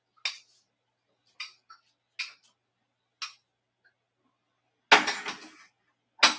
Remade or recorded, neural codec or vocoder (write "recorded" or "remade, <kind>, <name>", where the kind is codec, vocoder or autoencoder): recorded